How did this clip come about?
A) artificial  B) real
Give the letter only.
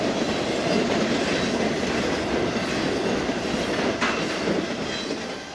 A